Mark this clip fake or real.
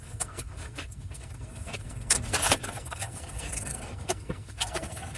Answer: fake